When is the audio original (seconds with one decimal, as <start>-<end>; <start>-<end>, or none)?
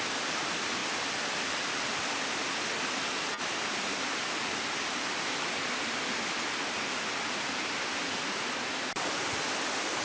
0.0-10.0